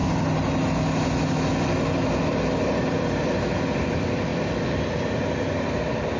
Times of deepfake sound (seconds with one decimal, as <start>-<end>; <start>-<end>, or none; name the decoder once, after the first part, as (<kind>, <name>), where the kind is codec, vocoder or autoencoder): none